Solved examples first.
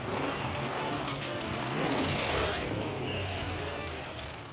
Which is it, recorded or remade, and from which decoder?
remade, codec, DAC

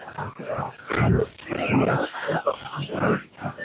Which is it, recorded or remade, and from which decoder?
remade, codec, DAC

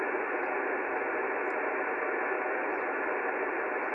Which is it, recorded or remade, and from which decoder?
recorded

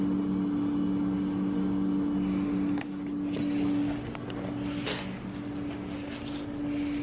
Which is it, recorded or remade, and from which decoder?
recorded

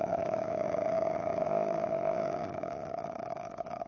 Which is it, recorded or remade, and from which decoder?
remade, codec, DAC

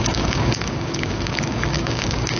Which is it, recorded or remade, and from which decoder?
remade, codec, DAC